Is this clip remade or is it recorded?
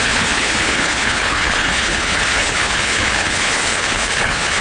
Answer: remade